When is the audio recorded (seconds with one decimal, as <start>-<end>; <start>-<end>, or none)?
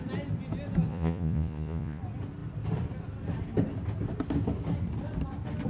0.0-0.9; 2.0-5.7